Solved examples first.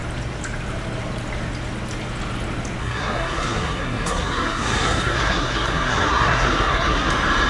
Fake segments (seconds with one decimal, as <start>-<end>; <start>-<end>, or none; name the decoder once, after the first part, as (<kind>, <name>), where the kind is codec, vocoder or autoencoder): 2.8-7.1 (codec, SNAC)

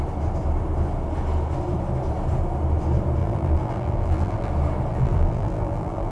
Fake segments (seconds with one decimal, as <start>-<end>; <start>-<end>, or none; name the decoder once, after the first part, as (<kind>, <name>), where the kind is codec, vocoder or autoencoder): 3.2-4.5 (vocoder, BigVGAN v2); 4.9-6.1

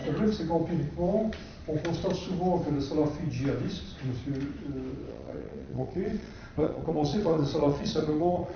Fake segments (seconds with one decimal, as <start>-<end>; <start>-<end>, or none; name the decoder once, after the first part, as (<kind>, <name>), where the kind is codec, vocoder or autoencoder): 5.1-8.6 (vocoder, Vocos)